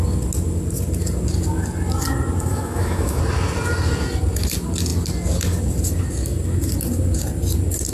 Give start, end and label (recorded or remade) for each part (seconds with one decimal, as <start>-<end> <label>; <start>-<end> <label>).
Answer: 0.0-2.5 recorded; 2.5-3.2 remade; 3.2-7.9 recorded